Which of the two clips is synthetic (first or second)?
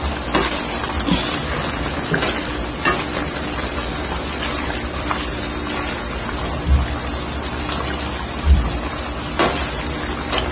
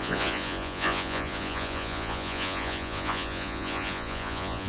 second